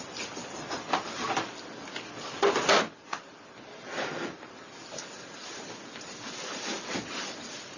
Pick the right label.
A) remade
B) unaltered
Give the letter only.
B